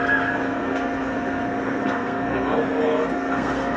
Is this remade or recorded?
remade